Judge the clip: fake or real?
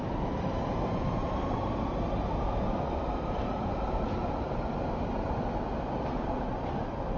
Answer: fake